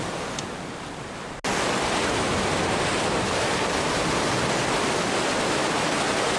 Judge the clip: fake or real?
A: real